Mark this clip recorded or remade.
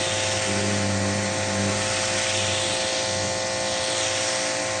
recorded